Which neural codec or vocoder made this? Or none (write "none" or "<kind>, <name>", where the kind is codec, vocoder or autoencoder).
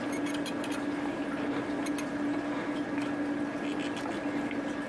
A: none